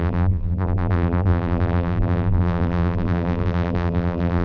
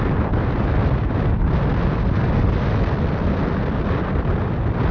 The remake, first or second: first